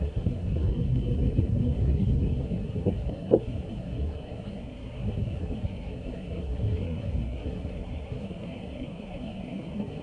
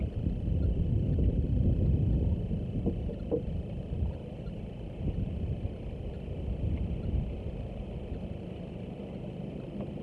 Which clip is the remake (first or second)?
first